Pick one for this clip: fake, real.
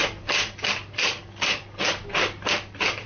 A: real